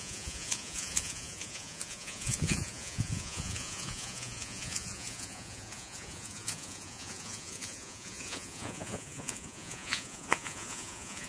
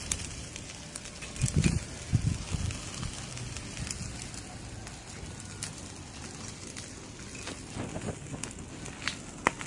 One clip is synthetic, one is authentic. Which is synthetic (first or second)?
first